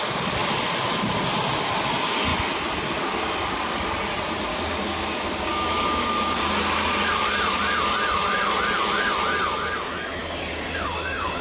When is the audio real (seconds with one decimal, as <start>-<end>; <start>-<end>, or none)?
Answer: 0.0-4.5; 6.4-10.2